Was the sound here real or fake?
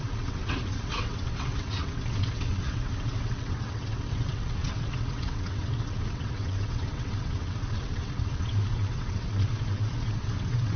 fake